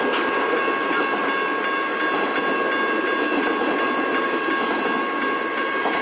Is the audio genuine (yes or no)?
yes